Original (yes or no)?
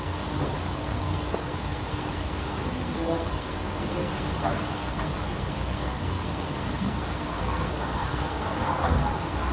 no